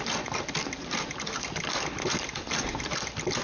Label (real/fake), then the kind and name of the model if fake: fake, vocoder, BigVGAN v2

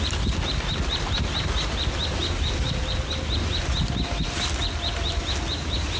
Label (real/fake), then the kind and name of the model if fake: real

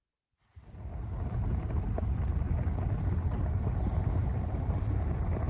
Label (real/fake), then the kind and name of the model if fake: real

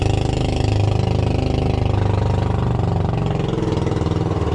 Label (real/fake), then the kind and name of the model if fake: real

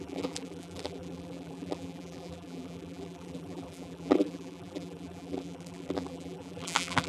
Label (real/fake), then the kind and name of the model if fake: fake, vocoder, BigVGAN v2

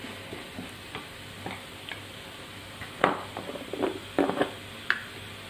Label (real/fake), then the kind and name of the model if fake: real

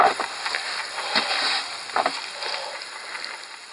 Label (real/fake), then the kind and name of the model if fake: fake, vocoder, BigVGAN v2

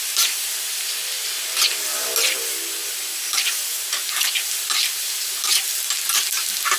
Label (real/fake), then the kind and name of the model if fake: real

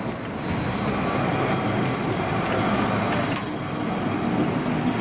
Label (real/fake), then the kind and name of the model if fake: real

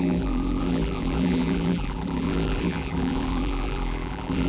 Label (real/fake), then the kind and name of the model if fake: fake, vocoder, BigVGAN v2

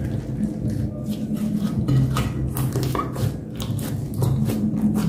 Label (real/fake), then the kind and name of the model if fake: real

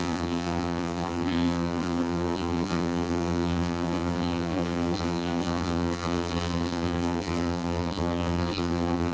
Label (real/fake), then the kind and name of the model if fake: fake, vocoder, BigVGAN v2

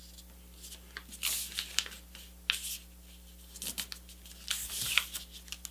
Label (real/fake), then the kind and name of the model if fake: real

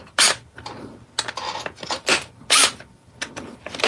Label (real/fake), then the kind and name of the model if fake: real